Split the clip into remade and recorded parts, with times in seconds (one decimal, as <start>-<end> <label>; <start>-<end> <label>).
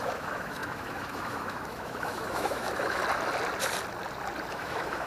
0.0-3.0 remade; 3.0-4.5 recorded; 4.5-5.1 remade